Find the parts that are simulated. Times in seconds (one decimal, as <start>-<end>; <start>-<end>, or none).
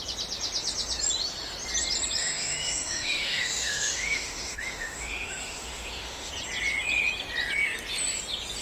2.2-6.3